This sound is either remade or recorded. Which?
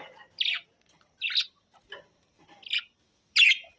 recorded